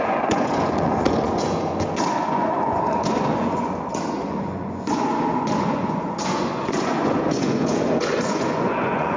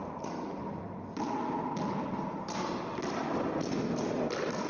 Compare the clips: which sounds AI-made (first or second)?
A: first